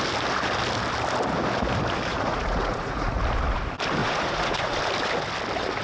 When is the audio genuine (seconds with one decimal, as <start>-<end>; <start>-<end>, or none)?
0.0-2.1; 3.2-4.0; 4.7-5.8